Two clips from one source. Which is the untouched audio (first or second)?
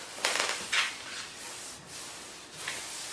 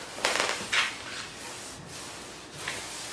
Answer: second